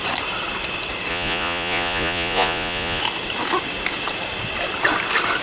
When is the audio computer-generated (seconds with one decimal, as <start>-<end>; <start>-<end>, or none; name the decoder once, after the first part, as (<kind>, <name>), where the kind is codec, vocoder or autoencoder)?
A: 1.1-3.0 (vocoder, Vocos)